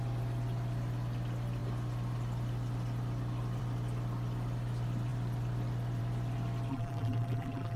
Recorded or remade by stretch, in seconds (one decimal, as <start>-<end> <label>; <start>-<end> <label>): 0.0-6.7 recorded; 6.7-7.8 remade